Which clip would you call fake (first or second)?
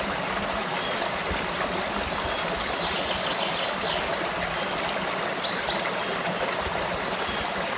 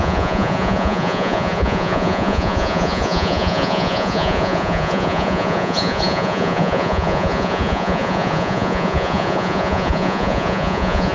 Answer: second